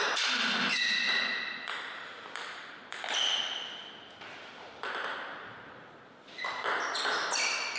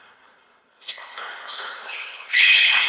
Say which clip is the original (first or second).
first